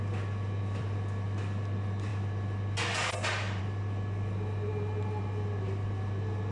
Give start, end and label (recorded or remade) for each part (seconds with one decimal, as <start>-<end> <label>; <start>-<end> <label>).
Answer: 0.0-6.5 recorded